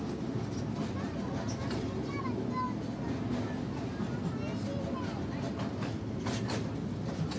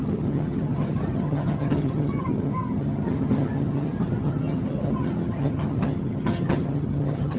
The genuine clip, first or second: first